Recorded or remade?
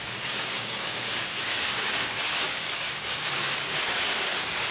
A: remade